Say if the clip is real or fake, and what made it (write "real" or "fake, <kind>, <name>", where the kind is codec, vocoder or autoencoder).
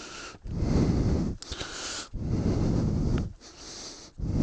real